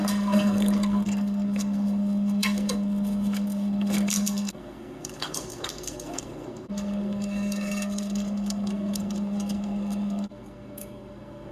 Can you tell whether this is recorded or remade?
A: remade